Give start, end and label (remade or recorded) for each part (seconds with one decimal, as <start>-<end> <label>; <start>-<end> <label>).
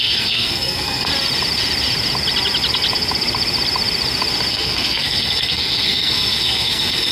0.0-1.1 remade; 1.1-4.5 recorded; 4.5-7.1 remade